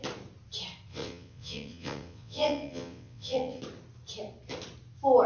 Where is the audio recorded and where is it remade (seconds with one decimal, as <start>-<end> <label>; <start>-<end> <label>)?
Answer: 0.0-0.9 recorded; 0.9-3.6 remade; 3.6-5.3 recorded